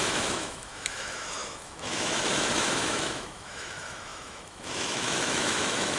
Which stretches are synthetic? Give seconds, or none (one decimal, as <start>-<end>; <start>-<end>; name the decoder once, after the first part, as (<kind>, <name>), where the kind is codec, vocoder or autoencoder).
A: 0.0-6.0 (autoencoder, DAC-VAE)